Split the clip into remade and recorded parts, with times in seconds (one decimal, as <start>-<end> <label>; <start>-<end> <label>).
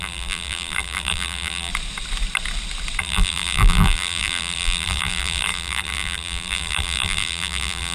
0.0-1.7 remade; 1.7-3.0 recorded; 3.0-7.9 remade